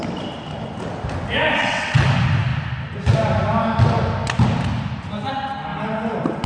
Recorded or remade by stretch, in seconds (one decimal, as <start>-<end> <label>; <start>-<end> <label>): 0.0-1.6 recorded; 1.6-2.1 remade; 2.1-6.5 recorded